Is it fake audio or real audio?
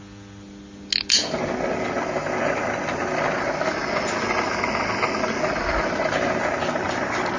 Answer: real